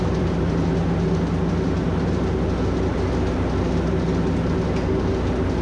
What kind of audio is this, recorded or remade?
recorded